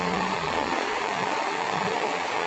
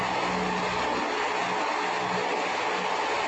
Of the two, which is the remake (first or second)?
first